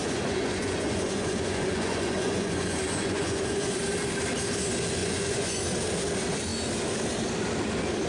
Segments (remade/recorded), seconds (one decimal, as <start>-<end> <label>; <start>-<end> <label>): 0.0-3.8 remade; 3.8-5.0 recorded; 5.0-5.6 remade; 5.6-8.1 recorded